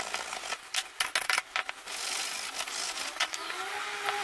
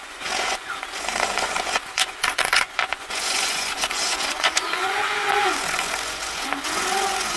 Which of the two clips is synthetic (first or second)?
second